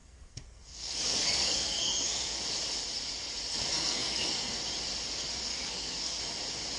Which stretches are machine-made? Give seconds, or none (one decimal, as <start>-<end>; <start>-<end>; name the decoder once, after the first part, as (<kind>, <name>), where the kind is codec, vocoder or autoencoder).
0.0-2.4 (codec, SNAC); 3.7-4.6; 5.5-6.2